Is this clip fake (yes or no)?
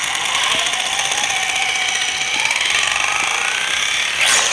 no